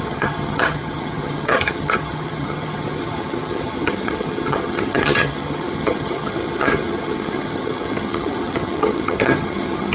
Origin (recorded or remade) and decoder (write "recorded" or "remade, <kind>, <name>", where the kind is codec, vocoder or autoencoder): remade, vocoder, HiFi-GAN